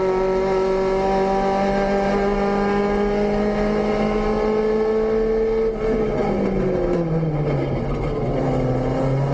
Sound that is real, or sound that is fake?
real